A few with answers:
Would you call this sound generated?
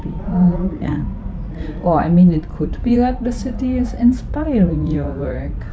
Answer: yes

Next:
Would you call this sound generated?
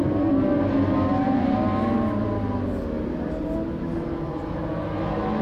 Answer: no